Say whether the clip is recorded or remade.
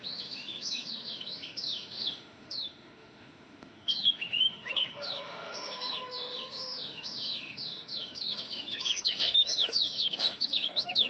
remade